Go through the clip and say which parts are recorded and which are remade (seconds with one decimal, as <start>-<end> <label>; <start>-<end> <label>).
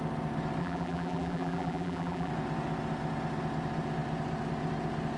0.0-0.6 recorded; 0.6-2.3 remade; 2.3-5.2 recorded